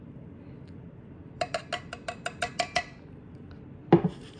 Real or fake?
real